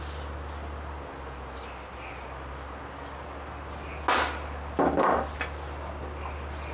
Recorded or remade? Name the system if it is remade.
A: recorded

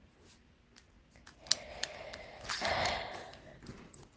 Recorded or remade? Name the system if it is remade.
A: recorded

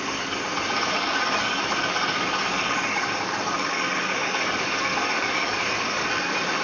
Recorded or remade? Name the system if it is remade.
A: remade, codec, DAC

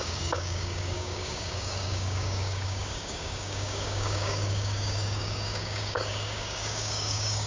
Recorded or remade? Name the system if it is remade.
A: remade, codec, DAC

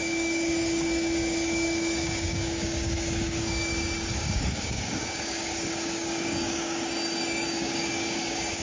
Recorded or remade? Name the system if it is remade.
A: remade, codec, DAC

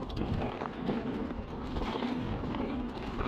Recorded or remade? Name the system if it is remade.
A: remade, codec, DAC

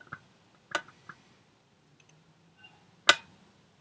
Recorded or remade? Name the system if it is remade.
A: recorded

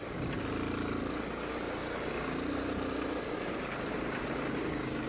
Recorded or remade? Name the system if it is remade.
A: recorded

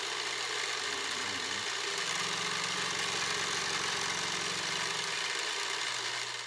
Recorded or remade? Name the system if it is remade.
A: recorded